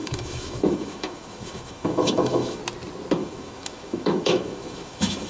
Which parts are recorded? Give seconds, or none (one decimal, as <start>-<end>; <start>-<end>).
2.6-3.2

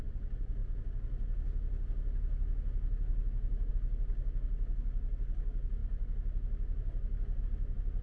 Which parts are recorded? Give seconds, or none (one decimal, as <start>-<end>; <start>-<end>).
0.0-8.0

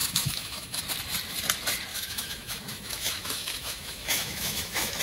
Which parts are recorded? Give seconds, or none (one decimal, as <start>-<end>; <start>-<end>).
0.8-1.9

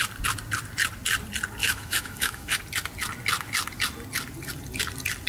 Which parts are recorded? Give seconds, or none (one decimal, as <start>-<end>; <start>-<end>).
0.0-1.6; 2.6-5.3

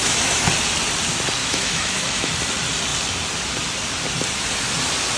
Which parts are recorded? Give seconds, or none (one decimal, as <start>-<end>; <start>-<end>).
0.5-1.4; 2.3-5.2